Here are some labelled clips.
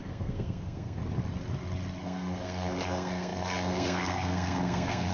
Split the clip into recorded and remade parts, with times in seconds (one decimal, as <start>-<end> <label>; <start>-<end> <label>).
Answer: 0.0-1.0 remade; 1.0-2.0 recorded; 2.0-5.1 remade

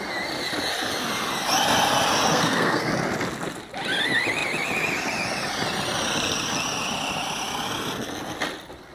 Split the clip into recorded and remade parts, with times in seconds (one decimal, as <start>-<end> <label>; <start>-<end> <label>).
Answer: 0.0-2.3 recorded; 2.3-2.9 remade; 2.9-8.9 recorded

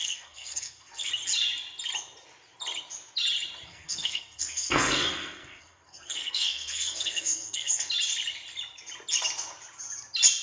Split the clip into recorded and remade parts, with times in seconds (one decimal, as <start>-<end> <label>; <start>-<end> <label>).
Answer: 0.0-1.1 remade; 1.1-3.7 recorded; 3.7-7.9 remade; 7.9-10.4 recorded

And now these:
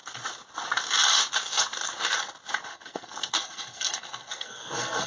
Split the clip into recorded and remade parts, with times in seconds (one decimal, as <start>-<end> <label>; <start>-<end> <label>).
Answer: 0.0-2.7 recorded; 2.7-5.1 remade

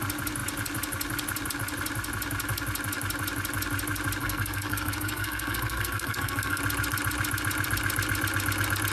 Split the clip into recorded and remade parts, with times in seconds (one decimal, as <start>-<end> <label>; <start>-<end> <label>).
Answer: 0.0-4.2 recorded; 4.2-6.6 remade; 6.6-8.9 recorded

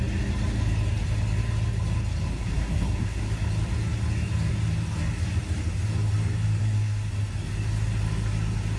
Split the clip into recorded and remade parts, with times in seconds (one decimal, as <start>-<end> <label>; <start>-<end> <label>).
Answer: 0.0-2.3 recorded; 2.3-3.3 remade; 3.3-6.6 recorded; 6.6-7.1 remade; 7.1-8.8 recorded